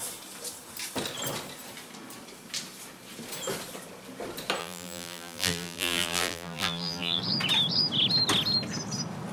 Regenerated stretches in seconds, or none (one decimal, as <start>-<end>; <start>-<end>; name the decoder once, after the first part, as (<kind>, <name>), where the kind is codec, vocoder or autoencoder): 4.6-7.2 (vocoder, BigVGAN v2)